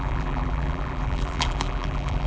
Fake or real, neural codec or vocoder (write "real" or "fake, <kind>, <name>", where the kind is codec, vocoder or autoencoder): fake, vocoder, BigVGAN v2